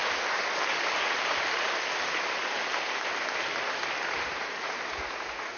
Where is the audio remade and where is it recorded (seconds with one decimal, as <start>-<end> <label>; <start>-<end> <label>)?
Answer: 0.0-4.4 recorded; 4.4-5.6 remade